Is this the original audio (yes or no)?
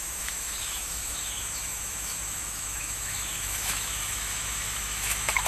no